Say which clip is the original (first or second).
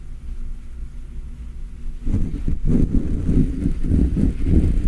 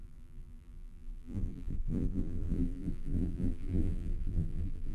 first